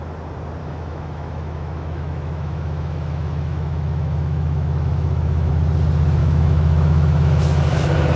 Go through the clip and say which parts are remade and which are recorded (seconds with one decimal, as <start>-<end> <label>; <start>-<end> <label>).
0.0-0.6 recorded; 0.6-5.5 remade; 5.5-6.2 recorded; 6.2-7.6 remade; 7.6-8.2 recorded